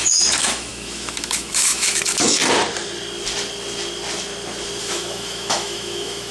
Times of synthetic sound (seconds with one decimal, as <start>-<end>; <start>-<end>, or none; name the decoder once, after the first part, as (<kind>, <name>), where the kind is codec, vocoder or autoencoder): 0.0-2.4 (autoencoder, DAC-VAE); 4.8-6.3